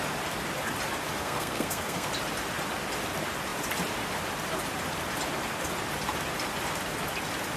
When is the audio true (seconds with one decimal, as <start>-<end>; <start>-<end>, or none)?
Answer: 0.0-1.2; 2.1-7.6